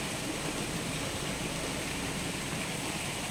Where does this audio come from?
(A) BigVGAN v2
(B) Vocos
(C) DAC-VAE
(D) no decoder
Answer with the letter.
A